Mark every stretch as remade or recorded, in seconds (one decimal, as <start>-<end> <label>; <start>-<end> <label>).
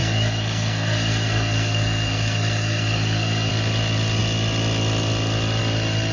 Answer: 0.0-3.5 remade; 3.5-6.1 recorded